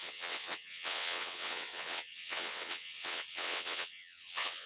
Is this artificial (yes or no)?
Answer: yes